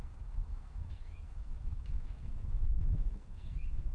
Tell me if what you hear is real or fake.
fake